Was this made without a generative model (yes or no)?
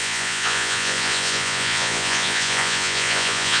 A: no